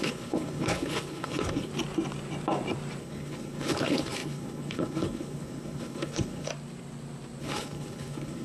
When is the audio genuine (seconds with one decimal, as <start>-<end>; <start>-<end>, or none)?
1.7-3.0; 6.5-7.4